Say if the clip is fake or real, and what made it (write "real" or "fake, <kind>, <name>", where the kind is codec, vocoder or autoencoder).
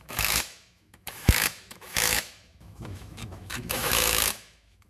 fake, autoencoder, DAC-VAE